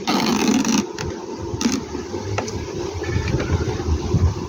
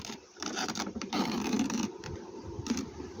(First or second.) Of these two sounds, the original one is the first